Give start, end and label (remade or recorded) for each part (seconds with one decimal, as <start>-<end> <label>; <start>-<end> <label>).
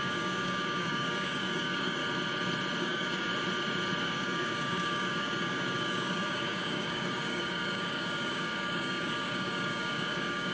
0.0-2.0 remade; 2.0-2.8 recorded; 2.8-3.3 remade; 3.3-4.0 recorded; 4.0-10.5 remade